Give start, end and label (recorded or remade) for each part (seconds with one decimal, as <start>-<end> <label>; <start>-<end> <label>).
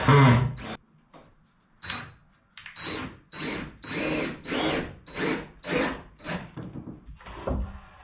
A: 0.0-5.9 recorded; 5.9-7.1 remade; 7.1-8.0 recorded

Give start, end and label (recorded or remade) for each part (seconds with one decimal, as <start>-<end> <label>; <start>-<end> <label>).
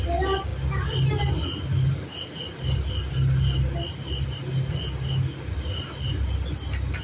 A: 0.0-7.0 recorded